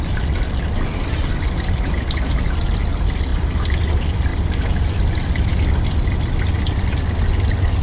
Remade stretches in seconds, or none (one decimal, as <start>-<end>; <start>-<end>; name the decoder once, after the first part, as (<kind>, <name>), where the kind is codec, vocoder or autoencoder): none